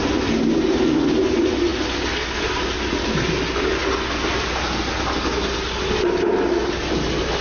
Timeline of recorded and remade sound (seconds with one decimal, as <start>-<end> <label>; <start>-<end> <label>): 0.0-7.4 recorded